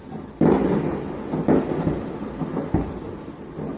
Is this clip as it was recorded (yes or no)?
yes